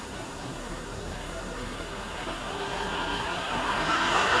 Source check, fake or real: fake